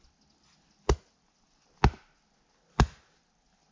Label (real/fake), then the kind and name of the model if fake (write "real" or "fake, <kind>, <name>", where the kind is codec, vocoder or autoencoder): real